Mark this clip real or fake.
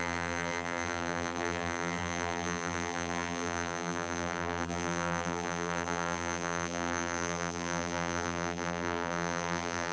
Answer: fake